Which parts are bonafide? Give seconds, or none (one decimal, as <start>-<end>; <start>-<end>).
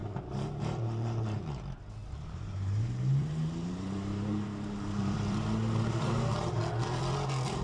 1.4-2.0; 6.6-7.6